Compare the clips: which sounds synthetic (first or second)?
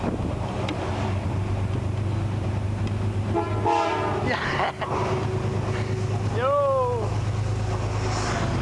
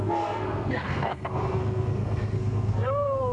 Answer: second